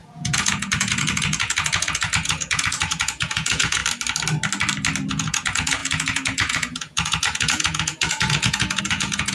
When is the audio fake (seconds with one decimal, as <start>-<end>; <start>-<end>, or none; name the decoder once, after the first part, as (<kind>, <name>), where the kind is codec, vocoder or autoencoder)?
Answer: 0.0-3.8 (vocoder, Vocos); 5.1-9.3